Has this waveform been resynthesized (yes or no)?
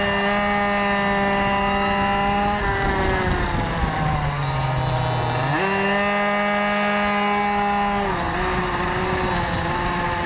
no